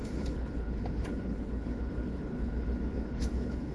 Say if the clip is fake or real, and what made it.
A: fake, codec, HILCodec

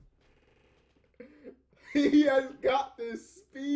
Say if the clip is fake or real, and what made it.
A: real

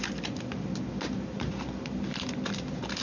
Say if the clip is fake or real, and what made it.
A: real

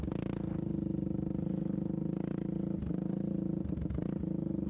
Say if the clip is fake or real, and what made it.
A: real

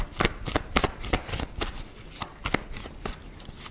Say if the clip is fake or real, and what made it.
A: real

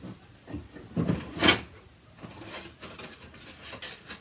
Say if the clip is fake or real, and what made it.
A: real